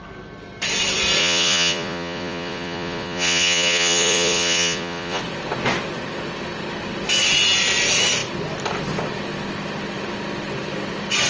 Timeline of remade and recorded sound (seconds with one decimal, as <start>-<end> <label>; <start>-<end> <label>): 0.0-1.2 recorded; 1.2-5.2 remade; 5.2-11.3 recorded